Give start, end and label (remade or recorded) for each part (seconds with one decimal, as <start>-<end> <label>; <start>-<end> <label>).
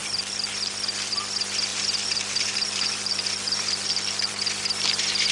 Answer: 0.0-0.5 remade; 0.5-1.7 recorded; 1.7-4.3 remade; 4.3-5.3 recorded